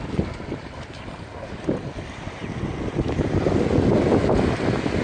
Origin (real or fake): real